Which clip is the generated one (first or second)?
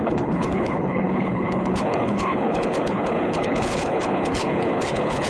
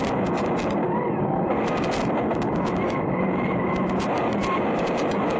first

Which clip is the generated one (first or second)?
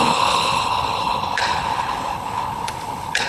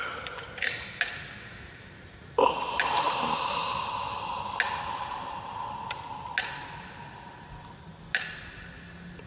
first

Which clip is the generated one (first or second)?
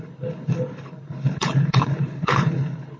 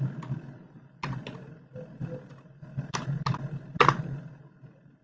first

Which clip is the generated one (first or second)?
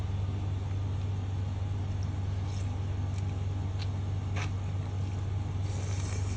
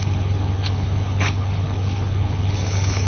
second